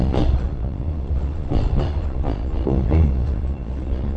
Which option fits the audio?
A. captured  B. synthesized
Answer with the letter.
B